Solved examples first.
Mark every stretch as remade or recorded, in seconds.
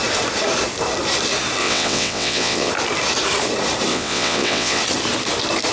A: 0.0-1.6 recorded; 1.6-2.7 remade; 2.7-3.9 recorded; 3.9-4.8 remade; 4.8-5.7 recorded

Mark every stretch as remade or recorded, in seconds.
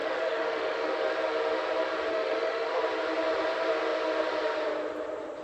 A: 0.0-1.1 remade; 1.1-2.1 recorded; 2.1-2.8 remade; 2.8-5.4 recorded